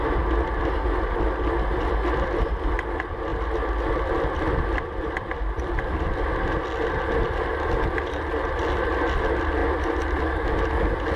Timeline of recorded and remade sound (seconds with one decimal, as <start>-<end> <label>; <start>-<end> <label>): 0.0-11.2 recorded